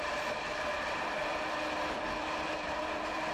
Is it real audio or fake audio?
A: fake